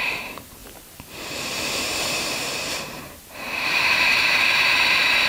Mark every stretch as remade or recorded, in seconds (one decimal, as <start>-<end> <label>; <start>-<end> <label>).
0.0-5.3 remade